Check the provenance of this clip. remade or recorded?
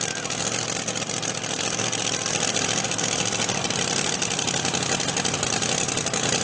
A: recorded